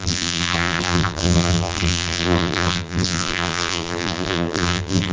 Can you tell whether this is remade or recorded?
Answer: remade